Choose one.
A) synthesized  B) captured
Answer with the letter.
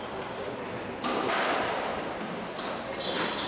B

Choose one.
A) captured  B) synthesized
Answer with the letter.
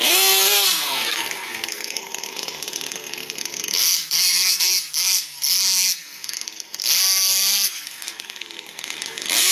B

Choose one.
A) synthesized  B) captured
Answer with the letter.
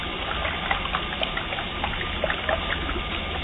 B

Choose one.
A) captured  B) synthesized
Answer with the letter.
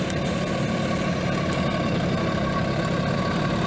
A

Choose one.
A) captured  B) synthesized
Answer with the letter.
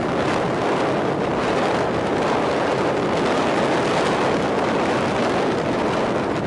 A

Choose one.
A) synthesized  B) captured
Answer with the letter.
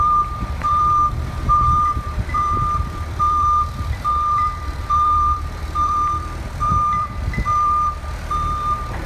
A